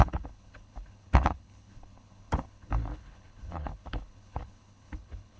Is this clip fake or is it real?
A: fake